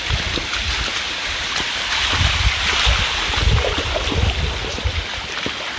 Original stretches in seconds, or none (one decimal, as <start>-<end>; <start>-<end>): 0.0-5.8